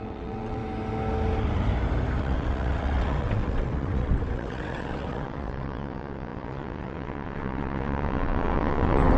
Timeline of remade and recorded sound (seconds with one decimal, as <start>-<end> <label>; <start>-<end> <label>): 0.0-0.6 remade; 0.6-2.2 recorded; 2.2-9.2 remade